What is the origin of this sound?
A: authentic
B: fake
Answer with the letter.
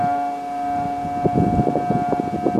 A